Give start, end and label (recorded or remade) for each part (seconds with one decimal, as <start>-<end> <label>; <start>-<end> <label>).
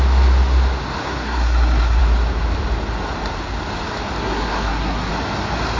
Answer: 0.0-1.0 recorded; 1.0-2.0 remade; 2.0-4.2 recorded; 4.2-5.1 remade; 5.1-5.8 recorded